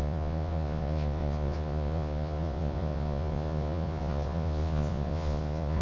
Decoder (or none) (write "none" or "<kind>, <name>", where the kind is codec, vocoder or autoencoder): vocoder, Vocos